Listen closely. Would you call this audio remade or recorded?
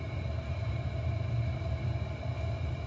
recorded